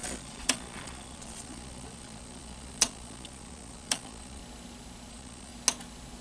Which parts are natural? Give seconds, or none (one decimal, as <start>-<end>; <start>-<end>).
4.4-5.1; 5.5-6.2